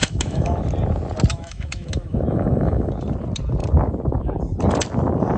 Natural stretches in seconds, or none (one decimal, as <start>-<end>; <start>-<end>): 0.6-1.3; 2.9-5.4